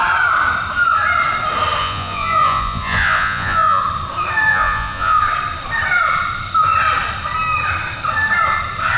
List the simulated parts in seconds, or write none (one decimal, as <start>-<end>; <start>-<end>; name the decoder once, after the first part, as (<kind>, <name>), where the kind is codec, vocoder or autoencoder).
1.8-3.8 (vocoder, Vocos); 4.5-5.2

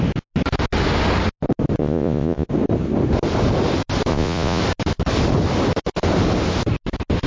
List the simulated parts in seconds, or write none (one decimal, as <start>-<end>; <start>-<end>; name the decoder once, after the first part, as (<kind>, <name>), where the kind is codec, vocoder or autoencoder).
1.8-2.5 (vocoder, Vocos); 4.1-4.6